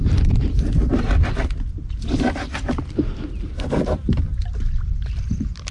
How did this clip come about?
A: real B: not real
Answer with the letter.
A